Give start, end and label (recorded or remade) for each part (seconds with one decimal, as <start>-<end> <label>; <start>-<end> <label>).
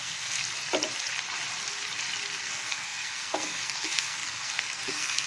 0.0-0.4 remade; 0.4-2.4 recorded; 2.4-5.3 remade